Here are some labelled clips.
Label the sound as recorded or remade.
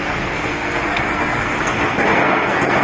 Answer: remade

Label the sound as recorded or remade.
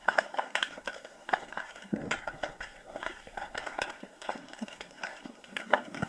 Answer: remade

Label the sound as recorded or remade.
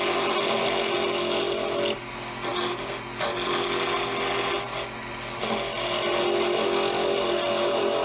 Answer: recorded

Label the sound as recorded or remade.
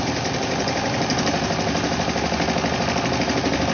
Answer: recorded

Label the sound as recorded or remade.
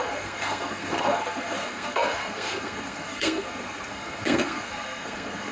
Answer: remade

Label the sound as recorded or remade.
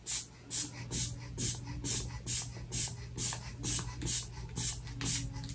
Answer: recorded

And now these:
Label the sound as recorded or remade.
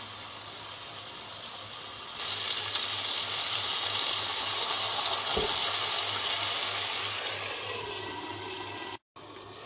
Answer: recorded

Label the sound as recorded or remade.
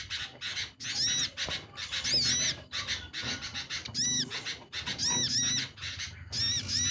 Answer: recorded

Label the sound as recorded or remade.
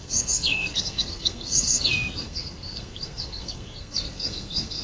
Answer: remade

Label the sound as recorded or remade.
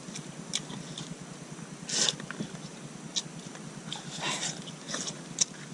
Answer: recorded